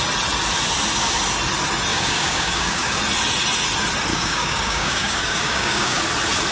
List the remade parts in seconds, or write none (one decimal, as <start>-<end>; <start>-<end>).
1.9-3.0; 4.1-6.0